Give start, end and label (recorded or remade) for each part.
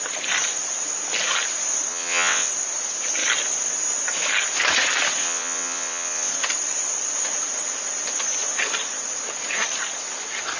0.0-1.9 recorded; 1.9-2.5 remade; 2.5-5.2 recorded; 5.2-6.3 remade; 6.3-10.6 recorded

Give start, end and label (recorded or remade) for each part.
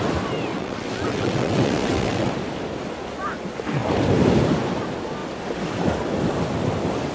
0.0-0.5 recorded; 0.5-2.3 remade; 2.3-7.1 recorded